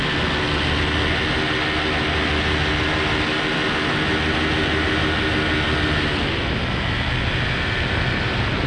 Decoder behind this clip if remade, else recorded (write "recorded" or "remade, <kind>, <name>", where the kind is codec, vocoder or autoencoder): recorded